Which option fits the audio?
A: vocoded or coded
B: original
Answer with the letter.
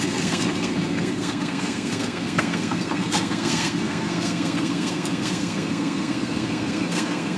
A